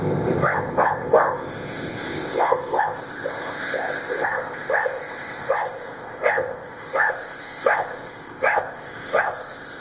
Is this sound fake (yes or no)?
yes